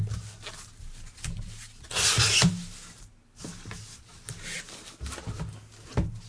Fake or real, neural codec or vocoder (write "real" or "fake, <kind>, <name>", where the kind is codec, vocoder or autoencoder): real